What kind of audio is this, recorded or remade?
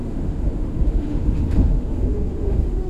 remade